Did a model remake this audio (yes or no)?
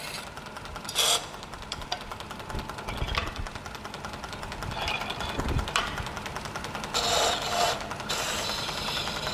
no